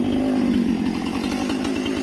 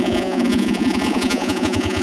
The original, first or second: first